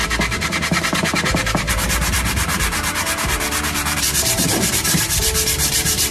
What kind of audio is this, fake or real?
fake